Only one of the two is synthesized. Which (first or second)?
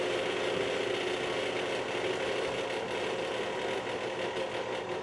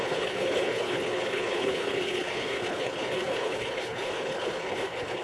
second